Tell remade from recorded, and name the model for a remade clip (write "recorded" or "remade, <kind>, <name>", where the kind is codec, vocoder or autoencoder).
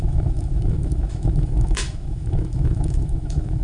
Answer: remade, autoencoder, DAC-VAE